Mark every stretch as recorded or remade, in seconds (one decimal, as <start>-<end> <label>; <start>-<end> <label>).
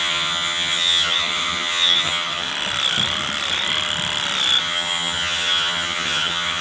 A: 0.0-2.5 remade; 2.5-4.6 recorded; 4.6-6.6 remade